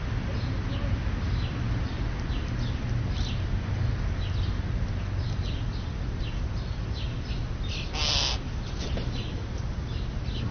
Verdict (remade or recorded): recorded